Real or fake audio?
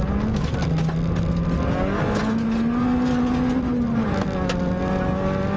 real